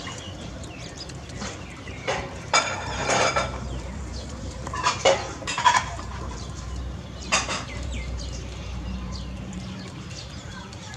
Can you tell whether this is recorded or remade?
remade